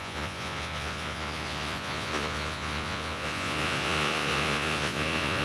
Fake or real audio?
fake